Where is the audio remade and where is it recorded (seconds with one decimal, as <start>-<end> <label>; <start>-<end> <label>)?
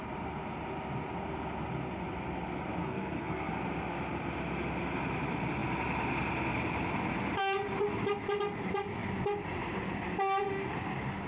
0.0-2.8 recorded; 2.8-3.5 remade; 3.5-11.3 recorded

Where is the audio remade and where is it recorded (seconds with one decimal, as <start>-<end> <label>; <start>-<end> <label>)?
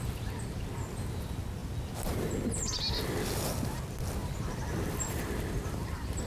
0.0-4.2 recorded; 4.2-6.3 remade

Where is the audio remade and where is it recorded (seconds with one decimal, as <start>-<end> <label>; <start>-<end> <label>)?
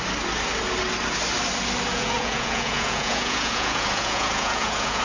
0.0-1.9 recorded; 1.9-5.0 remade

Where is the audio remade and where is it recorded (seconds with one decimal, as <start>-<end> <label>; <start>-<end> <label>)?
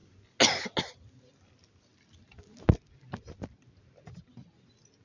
0.0-5.0 recorded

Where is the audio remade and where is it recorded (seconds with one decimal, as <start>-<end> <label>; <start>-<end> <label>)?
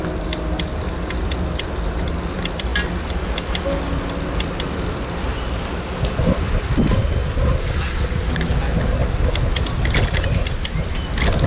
0.0-11.5 recorded